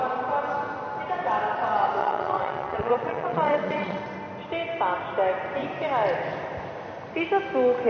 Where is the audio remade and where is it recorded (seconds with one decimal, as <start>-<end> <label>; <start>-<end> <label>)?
0.0-2.0 recorded; 2.0-4.0 remade; 4.0-7.9 recorded